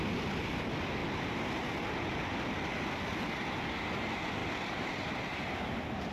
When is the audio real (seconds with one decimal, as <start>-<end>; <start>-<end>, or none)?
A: 0.0-6.1